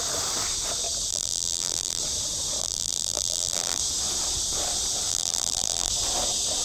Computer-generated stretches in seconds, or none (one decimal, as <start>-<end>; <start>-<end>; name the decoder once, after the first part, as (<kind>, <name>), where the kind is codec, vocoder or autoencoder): 1.1-2.0 (vocoder, BigVGAN v2); 2.6-3.8; 5.1-5.9